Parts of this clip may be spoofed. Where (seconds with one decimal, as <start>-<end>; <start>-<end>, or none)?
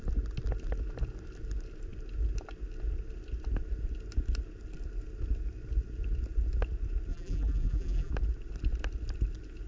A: 7.1-8.1